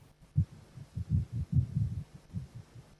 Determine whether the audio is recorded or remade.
recorded